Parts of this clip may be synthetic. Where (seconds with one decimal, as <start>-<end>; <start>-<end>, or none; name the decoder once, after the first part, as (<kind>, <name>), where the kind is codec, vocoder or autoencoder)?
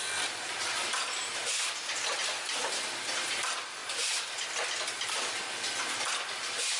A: none